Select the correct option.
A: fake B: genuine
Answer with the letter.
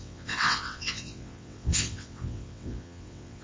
A